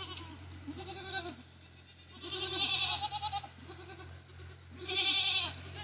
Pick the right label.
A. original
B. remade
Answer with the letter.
A